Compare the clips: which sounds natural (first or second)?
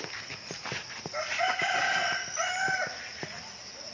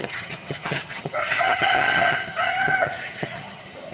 first